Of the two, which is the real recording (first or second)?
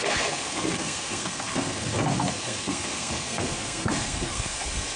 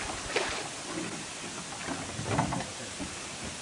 second